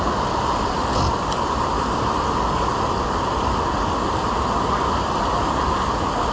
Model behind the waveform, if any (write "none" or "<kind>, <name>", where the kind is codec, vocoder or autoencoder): none